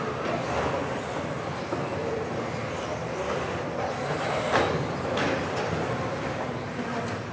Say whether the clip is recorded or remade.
recorded